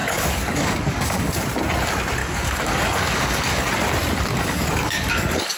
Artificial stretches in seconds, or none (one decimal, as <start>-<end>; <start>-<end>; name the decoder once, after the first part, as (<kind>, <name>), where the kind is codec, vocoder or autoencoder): 0.0-1.3 (codec, DAC); 2.2-3.7; 4.3-5.6